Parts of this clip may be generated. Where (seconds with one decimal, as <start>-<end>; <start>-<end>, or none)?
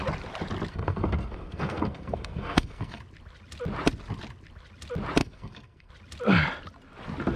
0.7-3.0; 5.2-5.9